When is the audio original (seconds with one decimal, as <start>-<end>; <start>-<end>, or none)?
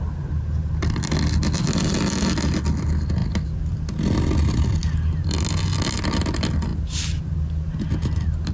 0.0-8.5